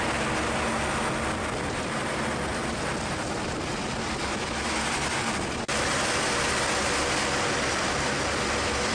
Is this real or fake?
real